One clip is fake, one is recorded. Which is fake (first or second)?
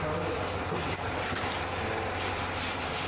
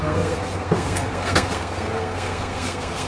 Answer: second